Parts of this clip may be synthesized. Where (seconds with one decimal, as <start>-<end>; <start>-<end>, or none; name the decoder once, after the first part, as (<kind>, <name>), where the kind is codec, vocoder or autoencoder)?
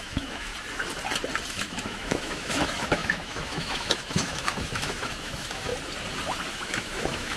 0.0-0.5 (autoencoder, DAC-VAE); 1.5-5.7; 6.5-7.4